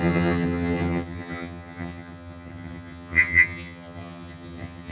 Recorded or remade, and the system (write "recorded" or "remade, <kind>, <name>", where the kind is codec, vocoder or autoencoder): remade, vocoder, HiFi-GAN